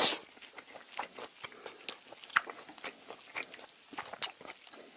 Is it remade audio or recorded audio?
recorded